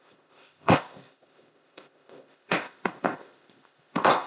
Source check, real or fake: fake